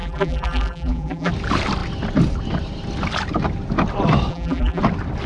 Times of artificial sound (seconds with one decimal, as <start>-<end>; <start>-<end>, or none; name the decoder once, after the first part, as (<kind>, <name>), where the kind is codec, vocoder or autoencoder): 0.0-1.3 (vocoder, BigVGAN v2); 4.3-4.8